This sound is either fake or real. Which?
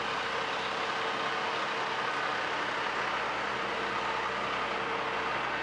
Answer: real